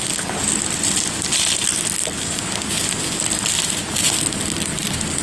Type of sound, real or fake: real